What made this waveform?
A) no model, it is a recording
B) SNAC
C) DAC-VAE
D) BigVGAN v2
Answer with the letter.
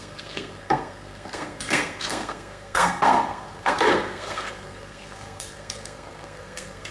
B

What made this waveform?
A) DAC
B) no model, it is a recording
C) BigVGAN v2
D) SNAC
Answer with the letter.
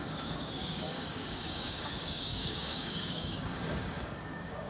A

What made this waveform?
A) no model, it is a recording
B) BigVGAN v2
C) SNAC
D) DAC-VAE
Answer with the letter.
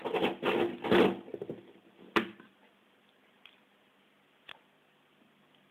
A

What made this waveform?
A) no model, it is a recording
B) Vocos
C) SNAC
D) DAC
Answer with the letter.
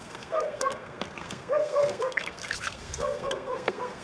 C